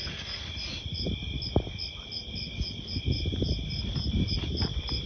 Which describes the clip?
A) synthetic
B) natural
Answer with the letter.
B